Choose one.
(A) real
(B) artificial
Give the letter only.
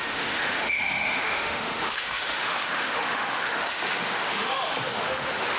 B